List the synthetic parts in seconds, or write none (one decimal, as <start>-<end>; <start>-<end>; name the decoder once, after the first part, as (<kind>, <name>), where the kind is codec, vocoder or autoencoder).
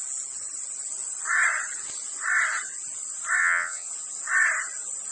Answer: 3.4-3.9 (vocoder, WaveNeXt)